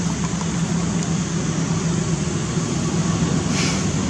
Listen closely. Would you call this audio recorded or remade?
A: recorded